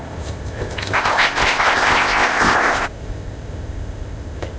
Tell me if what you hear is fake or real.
fake